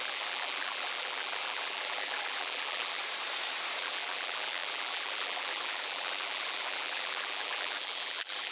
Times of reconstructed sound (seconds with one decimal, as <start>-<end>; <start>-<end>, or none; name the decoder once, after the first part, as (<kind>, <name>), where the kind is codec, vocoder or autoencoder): 0.0-3.0 (vocoder, BigVGAN v2); 3.8-8.5